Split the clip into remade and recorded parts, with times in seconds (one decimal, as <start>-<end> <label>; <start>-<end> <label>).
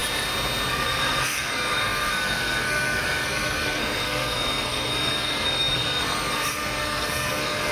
0.0-0.7 recorded; 0.7-7.7 remade